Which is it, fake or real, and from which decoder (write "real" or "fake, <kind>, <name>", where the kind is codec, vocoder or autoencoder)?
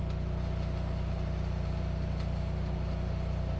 real